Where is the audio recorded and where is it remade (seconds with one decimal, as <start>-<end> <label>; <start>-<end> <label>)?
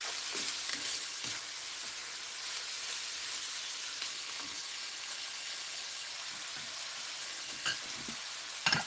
0.0-0.7 recorded; 0.7-1.3 remade; 1.3-4.1 recorded; 4.1-6.1 remade; 6.1-7.2 recorded; 7.2-7.8 remade; 7.8-8.9 recorded